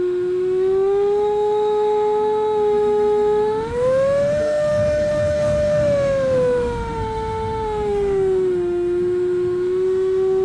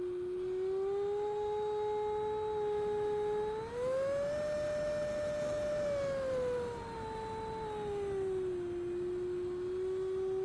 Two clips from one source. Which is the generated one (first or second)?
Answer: first